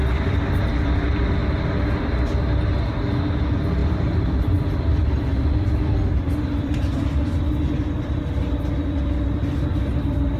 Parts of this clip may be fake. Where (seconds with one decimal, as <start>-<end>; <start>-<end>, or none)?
0.0-0.6; 3.8-8.2; 9.9-10.4